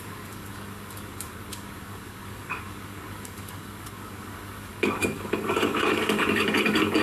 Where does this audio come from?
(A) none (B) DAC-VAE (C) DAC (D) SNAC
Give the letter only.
C